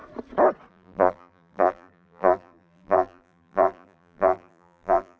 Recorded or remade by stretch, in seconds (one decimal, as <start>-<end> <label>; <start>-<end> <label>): 0.0-0.7 recorded; 0.7-5.2 remade